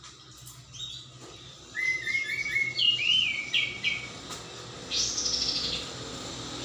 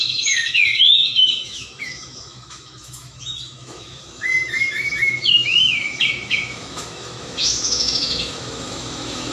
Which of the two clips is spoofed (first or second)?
second